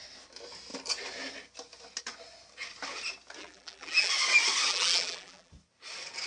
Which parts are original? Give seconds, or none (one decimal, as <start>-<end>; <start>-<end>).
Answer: 0.0-3.4; 4.1-4.7; 5.5-6.3